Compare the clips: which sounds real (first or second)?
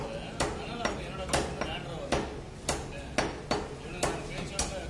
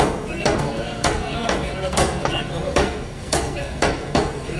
first